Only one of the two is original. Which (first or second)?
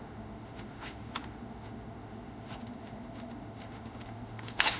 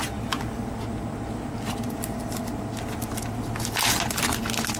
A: second